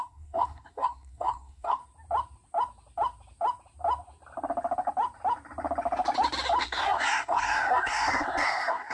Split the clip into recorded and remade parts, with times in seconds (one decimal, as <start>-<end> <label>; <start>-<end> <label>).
0.0-1.8 remade; 1.8-6.6 recorded; 6.6-8.9 remade